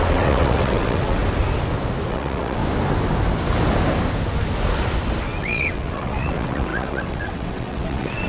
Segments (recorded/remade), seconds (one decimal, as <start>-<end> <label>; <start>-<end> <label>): 0.0-1.2 remade; 1.2-2.1 recorded; 2.1-2.6 remade; 2.6-5.2 recorded; 5.2-8.3 remade